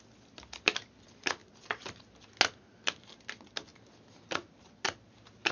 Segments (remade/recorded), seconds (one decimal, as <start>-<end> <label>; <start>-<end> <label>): 0.0-5.5 recorded